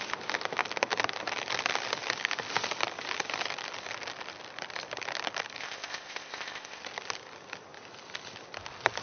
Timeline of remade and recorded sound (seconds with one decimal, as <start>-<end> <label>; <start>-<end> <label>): 0.0-5.6 recorded; 5.6-6.8 remade; 6.8-9.0 recorded